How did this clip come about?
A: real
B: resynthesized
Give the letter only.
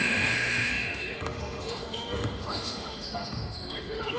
B